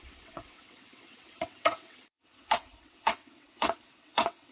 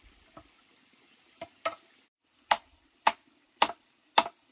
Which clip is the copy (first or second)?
first